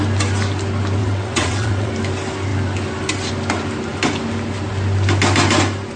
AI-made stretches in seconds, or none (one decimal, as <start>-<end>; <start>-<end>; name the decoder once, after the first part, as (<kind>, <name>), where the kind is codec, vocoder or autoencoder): 1.0-1.9 (vocoder, WaveNeXt)